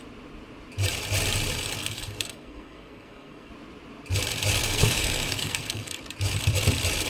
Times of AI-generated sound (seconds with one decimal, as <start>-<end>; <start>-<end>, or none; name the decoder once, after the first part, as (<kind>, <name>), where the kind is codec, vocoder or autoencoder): 1.8-3.5 (codec, SNAC); 4.6-6.0